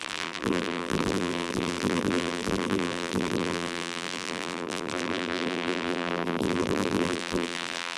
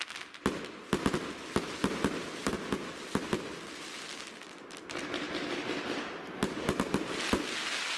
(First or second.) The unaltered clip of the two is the second